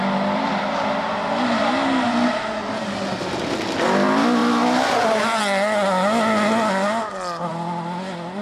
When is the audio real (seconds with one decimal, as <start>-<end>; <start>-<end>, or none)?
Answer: 0.0-8.4